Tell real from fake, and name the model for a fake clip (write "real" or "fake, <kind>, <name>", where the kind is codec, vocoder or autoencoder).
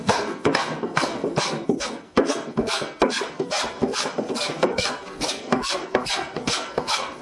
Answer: fake, codec, SNAC